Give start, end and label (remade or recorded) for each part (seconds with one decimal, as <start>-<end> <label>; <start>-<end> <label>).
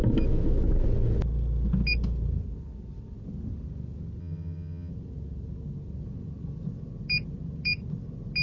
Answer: 0.0-4.2 recorded; 4.2-4.9 remade; 4.9-8.4 recorded